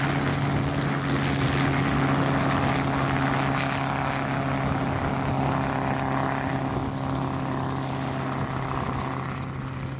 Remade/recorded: recorded